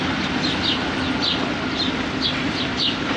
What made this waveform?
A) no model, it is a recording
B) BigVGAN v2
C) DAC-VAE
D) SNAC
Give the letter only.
A